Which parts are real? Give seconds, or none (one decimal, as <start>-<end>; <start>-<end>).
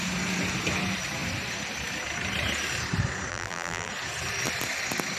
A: 0.0-3.3; 3.9-5.2